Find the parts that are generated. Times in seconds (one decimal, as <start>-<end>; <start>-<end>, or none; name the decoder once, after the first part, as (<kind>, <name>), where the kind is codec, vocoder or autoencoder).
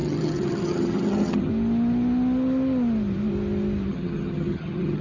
0.0-1.5 (vocoder, HiFi-GAN); 3.9-5.0